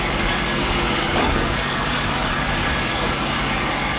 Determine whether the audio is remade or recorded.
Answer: remade